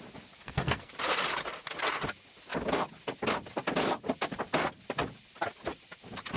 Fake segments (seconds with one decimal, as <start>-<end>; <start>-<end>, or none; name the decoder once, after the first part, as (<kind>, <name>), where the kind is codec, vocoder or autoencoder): 0.4-0.9 (codec, SNAC)